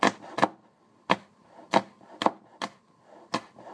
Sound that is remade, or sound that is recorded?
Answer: recorded